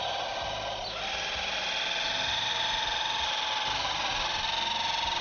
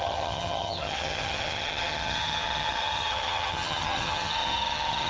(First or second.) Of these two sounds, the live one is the first